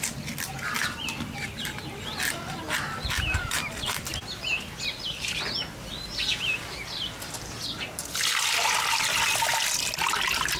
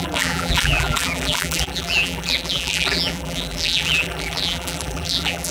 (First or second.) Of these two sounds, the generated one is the second